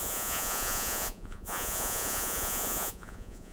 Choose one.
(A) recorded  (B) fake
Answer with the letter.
B